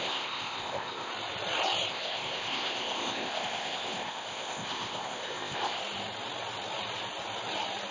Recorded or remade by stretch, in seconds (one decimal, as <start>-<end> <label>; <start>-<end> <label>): 0.0-1.1 remade; 1.1-1.9 recorded; 1.9-5.8 remade; 5.8-7.9 recorded